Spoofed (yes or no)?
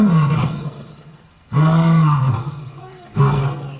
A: yes